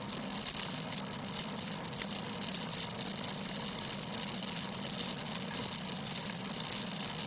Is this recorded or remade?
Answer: recorded